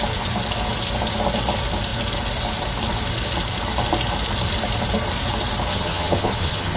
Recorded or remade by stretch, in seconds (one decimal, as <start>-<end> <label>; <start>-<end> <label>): 0.0-5.7 recorded; 5.7-6.8 remade